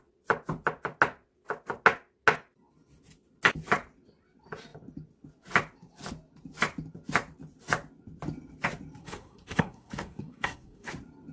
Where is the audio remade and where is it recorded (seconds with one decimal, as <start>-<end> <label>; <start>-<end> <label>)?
0.0-9.0 recorded; 9.0-10.9 remade; 10.9-11.3 recorded